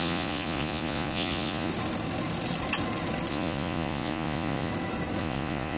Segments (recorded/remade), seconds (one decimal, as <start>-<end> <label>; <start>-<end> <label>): 0.0-1.7 remade; 1.7-3.3 recorded; 3.3-4.7 remade; 4.7-5.2 recorded; 5.2-5.8 remade